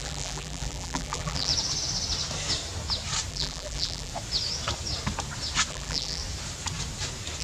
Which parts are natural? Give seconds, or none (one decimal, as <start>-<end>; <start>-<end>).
1.5-3.3; 4.1-5.7; 6.2-7.4